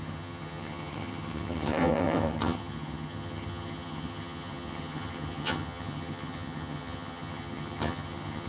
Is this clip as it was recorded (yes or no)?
no